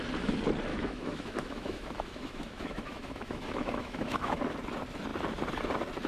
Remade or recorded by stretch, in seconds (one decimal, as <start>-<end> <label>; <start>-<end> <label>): 0.0-0.7 recorded; 0.7-4.4 remade; 4.4-6.1 recorded